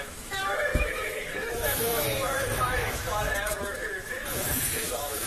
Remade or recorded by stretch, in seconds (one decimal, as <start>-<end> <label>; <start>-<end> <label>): 0.0-5.3 remade